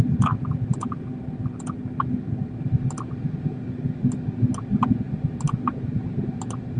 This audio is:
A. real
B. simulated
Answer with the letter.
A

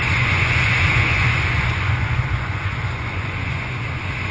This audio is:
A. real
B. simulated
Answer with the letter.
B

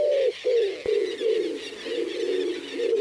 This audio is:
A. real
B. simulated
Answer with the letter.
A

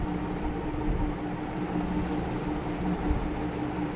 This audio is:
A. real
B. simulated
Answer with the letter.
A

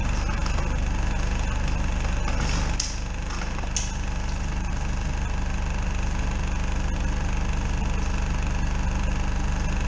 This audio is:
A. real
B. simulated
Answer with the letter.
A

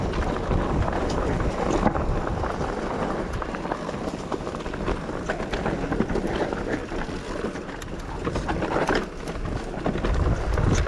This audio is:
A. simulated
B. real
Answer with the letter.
B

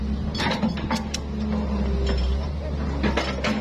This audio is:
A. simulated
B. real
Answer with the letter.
B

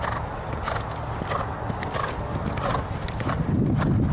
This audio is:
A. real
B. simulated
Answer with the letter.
A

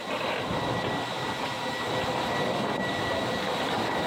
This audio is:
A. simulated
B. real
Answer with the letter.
B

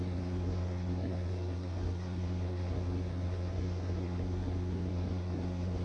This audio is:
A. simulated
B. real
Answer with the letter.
A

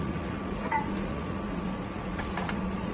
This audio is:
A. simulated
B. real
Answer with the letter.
A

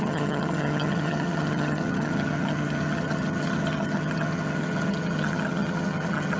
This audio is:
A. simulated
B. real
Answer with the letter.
A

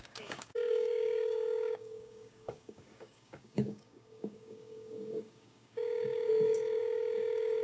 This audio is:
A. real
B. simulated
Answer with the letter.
B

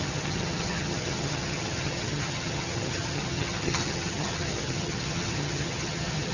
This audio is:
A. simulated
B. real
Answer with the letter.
A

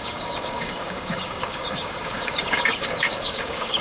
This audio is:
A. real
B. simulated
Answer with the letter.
B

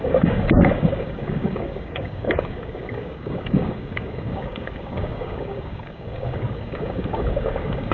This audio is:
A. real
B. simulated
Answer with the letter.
B